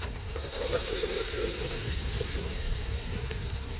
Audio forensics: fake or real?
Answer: fake